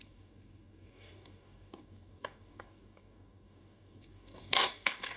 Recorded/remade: remade